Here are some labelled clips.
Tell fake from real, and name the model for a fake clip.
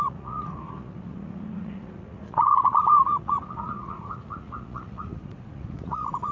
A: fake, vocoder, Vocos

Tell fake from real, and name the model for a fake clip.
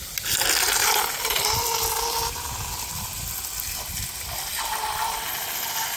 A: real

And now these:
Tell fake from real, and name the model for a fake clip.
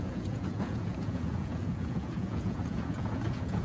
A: fake, vocoder, Vocos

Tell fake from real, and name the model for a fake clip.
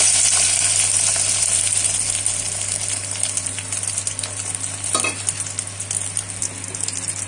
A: real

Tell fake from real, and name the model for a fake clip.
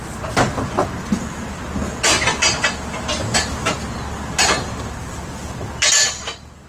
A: real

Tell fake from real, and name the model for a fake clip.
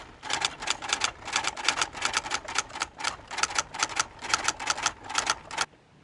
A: real